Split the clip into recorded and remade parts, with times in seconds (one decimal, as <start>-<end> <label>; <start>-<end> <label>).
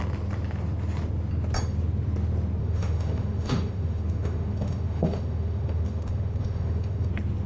0.0-2.6 recorded; 2.6-7.1 remade; 7.1-7.5 recorded